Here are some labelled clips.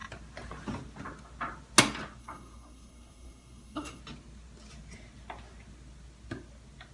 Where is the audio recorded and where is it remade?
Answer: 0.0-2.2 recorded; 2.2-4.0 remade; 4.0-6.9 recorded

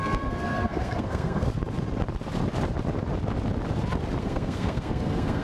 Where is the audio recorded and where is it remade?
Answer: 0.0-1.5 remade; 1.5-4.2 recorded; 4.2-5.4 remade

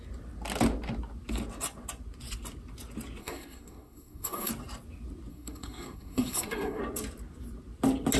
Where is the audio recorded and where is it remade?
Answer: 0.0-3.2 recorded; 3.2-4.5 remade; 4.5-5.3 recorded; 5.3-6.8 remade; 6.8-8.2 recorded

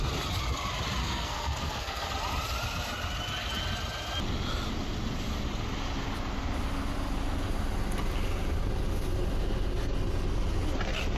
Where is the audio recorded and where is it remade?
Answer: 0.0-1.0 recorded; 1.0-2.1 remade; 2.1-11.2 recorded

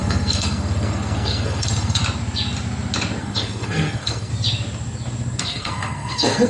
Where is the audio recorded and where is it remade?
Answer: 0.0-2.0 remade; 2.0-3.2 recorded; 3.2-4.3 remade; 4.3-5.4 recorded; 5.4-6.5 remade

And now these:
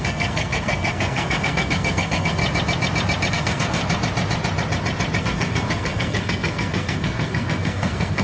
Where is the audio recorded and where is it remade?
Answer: 0.0-2.4 remade; 2.4-3.3 recorded; 3.3-3.8 remade; 3.8-5.2 recorded; 5.2-8.2 remade

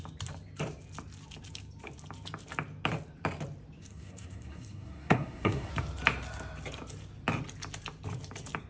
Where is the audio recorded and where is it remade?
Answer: 0.0-3.8 recorded; 3.8-5.7 remade; 5.7-8.7 recorded

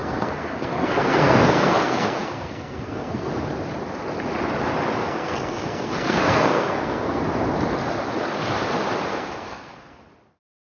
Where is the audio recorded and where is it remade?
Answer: 0.0-3.3 remade; 3.3-5.0 recorded; 5.0-7.2 remade; 7.2-9.1 recorded; 9.1-10.0 remade; 10.0-10.7 recorded